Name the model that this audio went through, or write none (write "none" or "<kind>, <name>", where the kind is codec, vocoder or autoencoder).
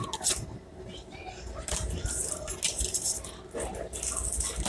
none